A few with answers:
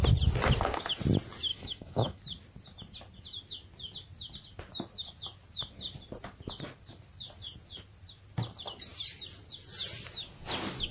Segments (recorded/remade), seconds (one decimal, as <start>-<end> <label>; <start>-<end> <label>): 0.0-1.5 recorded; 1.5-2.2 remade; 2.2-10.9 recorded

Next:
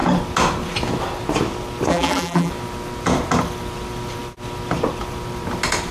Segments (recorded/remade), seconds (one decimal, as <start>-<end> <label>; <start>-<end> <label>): 0.0-1.9 recorded; 1.9-2.5 remade; 2.5-5.9 recorded

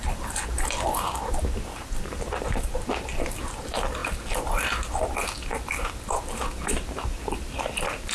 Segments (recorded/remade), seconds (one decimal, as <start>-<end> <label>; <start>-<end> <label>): 0.0-8.1 recorded